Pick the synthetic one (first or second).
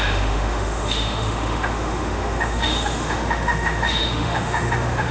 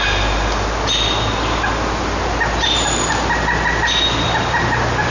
first